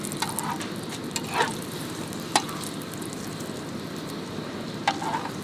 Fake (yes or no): no